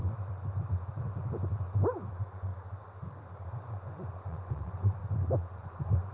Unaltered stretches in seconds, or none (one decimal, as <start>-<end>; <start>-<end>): 0.0-2.1; 2.5-3.5; 5.0-5.6